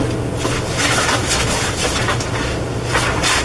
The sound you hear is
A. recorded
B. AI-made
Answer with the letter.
A